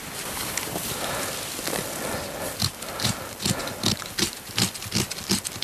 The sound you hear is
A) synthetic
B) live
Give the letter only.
A